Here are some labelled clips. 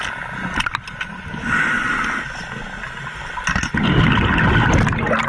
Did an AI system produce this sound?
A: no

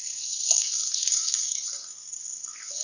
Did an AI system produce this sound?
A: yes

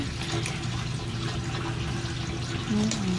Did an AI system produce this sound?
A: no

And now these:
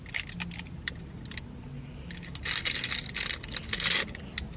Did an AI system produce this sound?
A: no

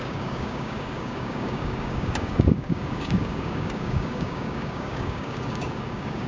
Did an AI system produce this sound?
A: yes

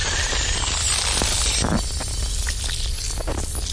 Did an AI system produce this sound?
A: no